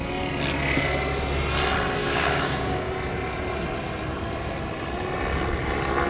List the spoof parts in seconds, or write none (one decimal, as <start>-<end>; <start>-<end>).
2.0-2.9

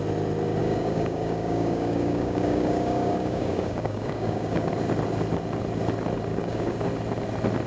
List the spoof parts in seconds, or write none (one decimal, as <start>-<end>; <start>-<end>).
0.6-4.7; 6.3-6.9